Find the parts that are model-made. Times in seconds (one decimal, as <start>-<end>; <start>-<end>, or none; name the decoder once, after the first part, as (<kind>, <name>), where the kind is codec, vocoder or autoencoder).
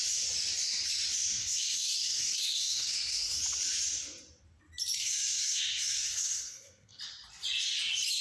1.4-3.4 (codec, SNAC); 5.0-7.0